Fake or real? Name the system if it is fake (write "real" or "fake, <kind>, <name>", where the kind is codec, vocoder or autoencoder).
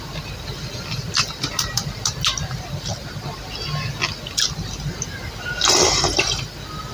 real